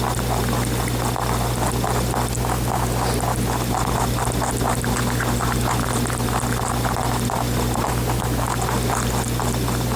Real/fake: real